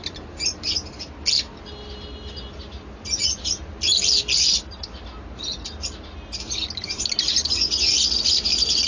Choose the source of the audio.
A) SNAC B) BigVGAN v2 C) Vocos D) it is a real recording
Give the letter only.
D